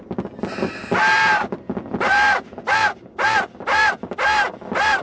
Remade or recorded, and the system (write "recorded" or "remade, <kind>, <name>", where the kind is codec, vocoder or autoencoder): recorded